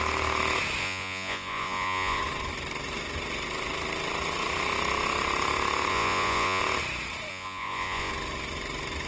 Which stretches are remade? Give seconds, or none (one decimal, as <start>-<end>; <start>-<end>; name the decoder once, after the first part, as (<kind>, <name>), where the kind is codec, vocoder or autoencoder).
0.8-2.2 (vocoder, Vocos); 5.9-6.6; 7.3-8.1